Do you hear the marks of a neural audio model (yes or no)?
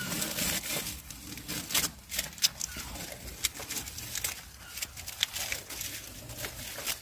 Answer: no